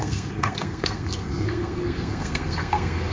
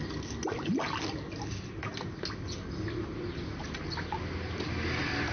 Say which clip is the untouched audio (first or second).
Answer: second